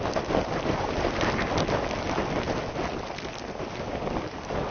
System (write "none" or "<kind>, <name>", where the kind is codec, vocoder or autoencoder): none